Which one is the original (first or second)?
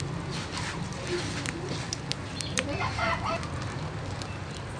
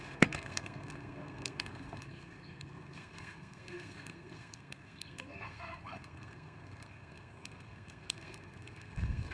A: first